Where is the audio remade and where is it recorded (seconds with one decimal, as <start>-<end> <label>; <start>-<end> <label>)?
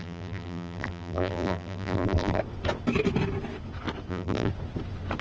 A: 0.0-2.4 remade; 2.4-4.1 recorded; 4.1-4.5 remade; 4.5-5.2 recorded